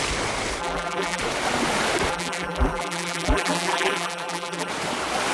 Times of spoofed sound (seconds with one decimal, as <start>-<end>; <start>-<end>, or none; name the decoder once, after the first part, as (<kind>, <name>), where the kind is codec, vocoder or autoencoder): 0.6-1.2 (vocoder, BigVGAN v2); 2.1-4.7